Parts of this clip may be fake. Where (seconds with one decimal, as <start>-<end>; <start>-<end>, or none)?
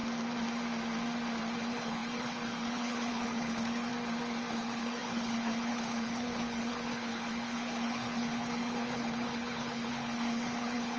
1.6-3.9; 4.5-11.0